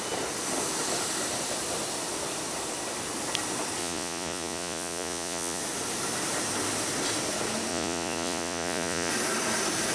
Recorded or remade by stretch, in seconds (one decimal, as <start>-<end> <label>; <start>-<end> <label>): 0.0-3.8 recorded; 3.8-5.6 remade; 5.6-7.7 recorded; 7.7-9.1 remade; 9.1-9.9 recorded